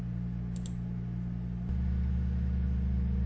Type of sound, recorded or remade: recorded